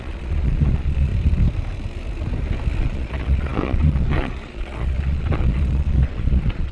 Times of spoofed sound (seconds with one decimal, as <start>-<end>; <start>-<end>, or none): 0.0-1.1; 2.8-6.7